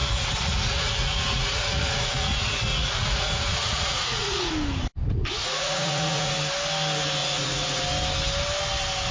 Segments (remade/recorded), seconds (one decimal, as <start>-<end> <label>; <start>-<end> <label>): 0.0-4.5 remade; 4.5-5.4 recorded; 5.4-6.3 remade; 6.3-7.2 recorded; 7.2-7.8 remade; 7.8-9.1 recorded